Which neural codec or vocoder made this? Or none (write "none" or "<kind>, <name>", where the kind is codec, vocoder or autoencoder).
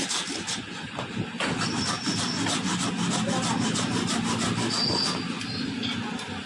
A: none